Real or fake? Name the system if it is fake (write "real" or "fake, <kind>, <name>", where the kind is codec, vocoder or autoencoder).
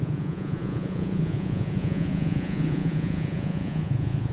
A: fake, vocoder, Vocos